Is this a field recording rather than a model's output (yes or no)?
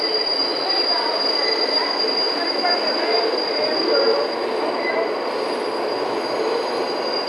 yes